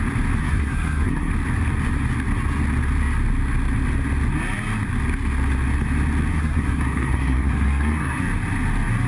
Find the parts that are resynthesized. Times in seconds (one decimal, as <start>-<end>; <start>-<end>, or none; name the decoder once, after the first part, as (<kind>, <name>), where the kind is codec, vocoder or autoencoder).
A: 0.4-1.3 (codec, SNAC); 6.3-8.2